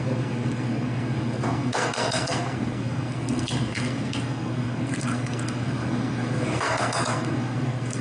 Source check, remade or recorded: remade